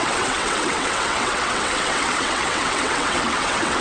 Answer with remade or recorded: remade